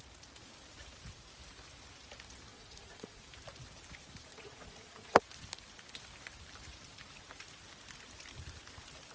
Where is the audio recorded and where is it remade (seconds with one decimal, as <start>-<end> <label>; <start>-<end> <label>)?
0.0-2.5 recorded; 2.5-3.2 remade; 3.2-4.3 recorded; 4.3-5.2 remade; 5.2-9.1 recorded